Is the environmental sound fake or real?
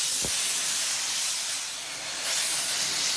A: real